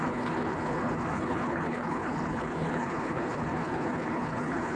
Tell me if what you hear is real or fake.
fake